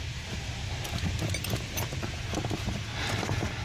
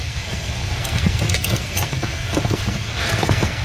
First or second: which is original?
first